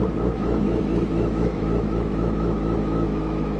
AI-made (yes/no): yes